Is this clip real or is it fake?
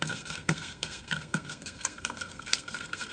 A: fake